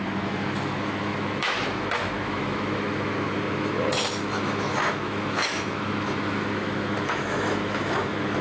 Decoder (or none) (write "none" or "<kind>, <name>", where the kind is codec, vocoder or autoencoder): autoencoder, DAC-VAE